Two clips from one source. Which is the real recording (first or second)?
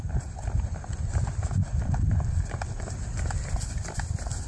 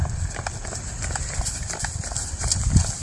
first